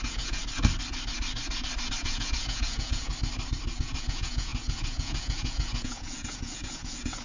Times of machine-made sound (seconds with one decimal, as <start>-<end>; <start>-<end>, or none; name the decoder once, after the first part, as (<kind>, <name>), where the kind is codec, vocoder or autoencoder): 0.0-0.4 (vocoder, Vocos); 2.0-3.1; 3.8-7.2